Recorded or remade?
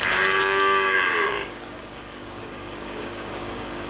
remade